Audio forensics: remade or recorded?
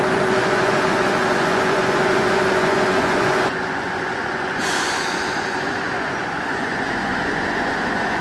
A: remade